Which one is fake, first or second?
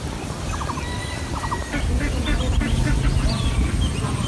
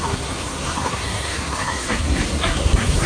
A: second